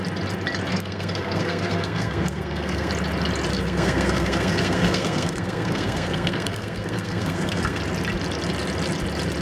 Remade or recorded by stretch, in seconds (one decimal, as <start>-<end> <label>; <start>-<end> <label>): 0.0-0.7 recorded; 0.7-2.9 remade; 2.9-3.5 recorded; 3.5-7.8 remade; 7.8-9.4 recorded